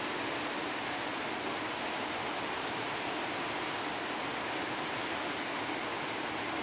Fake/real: real